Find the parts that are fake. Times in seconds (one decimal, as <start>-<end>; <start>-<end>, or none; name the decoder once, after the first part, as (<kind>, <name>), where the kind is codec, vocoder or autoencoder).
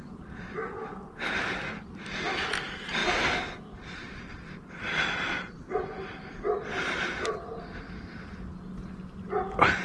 none